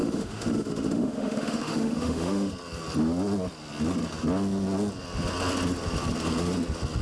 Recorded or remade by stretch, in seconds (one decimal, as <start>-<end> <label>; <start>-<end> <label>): 0.0-2.5 remade; 2.5-7.0 recorded